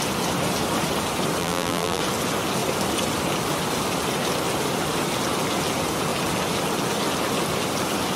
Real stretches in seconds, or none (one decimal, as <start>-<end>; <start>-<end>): 0.0-1.4; 2.0-8.2